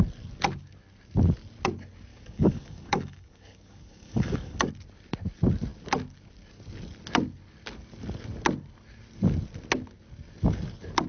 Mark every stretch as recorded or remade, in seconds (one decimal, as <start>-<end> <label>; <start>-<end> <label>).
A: 0.0-2.1 recorded; 2.1-4.7 remade; 4.7-11.1 recorded